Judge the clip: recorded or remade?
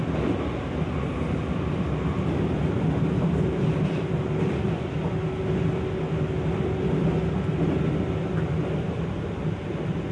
recorded